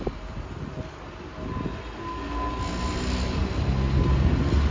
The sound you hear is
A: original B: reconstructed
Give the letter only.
A